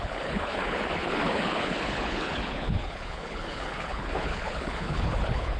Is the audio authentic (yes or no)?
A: no